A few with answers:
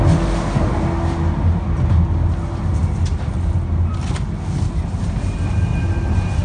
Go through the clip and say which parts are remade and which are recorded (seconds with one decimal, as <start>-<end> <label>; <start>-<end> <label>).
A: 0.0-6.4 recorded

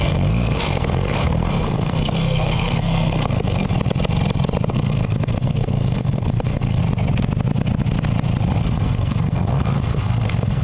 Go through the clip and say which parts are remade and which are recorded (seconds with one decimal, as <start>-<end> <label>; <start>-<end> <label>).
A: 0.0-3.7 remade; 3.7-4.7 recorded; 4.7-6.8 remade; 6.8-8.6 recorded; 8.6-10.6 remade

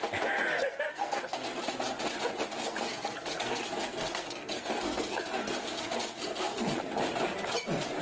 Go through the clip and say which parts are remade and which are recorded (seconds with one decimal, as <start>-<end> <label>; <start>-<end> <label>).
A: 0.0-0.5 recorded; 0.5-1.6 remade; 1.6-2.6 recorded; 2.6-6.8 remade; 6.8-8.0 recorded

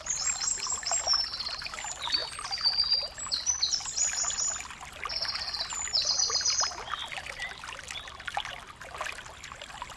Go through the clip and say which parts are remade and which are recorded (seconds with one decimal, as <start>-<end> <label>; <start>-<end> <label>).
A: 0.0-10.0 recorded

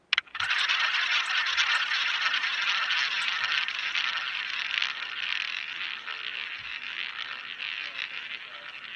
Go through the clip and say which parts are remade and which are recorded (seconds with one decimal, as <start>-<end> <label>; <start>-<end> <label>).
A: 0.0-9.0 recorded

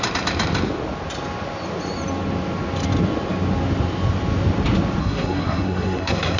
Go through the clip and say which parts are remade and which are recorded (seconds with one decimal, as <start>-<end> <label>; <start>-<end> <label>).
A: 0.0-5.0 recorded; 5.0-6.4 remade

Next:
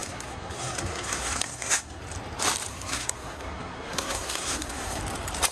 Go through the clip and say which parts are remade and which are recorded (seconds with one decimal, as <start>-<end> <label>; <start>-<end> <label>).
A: 0.0-2.0 remade; 2.0-2.7 recorded; 2.7-5.0 remade; 5.0-5.5 recorded

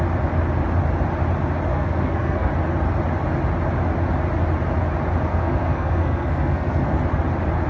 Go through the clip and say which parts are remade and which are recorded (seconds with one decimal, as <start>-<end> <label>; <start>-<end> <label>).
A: 0.0-1.7 recorded; 1.7-2.5 remade; 2.5-5.3 recorded; 5.3-7.0 remade; 7.0-7.7 recorded